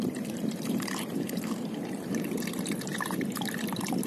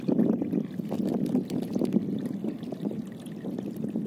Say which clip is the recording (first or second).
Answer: second